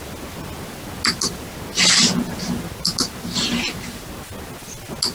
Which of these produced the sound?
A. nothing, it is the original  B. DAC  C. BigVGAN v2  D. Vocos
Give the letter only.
A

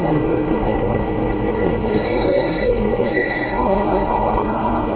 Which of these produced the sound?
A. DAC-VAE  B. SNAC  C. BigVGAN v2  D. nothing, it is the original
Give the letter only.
B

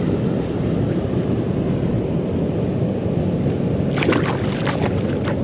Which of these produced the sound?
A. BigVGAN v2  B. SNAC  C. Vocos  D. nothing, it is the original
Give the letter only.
D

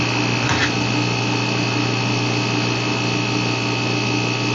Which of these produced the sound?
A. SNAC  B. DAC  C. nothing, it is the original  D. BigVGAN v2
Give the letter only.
C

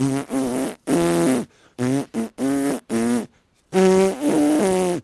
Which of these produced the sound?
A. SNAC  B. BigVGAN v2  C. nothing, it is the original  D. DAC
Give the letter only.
C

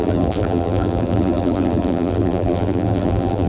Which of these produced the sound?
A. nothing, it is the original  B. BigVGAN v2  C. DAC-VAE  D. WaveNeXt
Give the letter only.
B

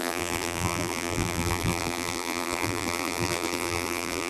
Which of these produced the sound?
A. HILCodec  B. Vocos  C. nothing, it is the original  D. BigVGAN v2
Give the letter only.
D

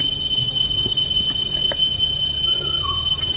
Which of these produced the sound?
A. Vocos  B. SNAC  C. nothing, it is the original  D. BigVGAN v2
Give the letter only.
C